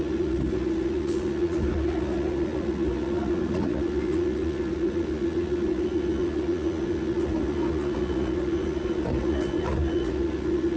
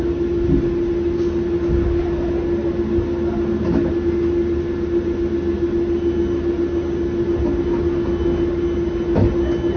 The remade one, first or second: first